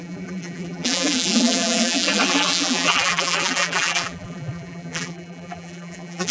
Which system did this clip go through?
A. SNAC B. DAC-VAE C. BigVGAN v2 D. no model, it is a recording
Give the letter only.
C